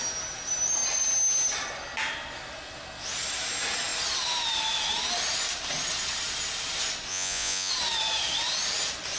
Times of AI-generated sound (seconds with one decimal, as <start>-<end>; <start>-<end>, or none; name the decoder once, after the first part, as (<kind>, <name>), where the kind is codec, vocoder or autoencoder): 7.1-7.7 (vocoder, Vocos)